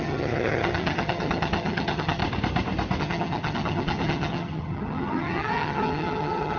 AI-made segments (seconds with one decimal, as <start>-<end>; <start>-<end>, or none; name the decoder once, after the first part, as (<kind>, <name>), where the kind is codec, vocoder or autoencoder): 0.0-2.2 (vocoder, HiFi-GAN); 3.0-6.6